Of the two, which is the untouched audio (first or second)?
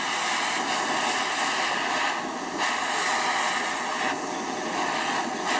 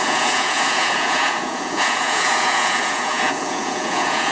first